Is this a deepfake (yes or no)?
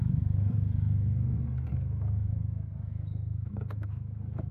yes